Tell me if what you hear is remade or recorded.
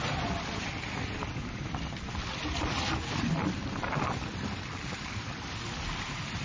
recorded